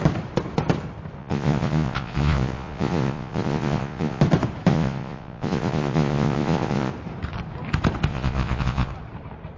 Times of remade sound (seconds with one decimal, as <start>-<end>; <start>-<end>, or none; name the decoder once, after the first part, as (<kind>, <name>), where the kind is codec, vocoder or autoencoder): 1.2-4.2 (vocoder, Vocos); 4.7-6.9; 8.1-8.9